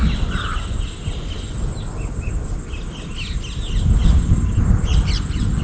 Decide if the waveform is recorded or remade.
recorded